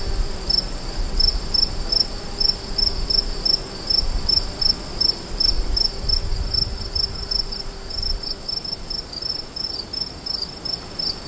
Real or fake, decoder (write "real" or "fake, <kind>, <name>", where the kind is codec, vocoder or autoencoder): real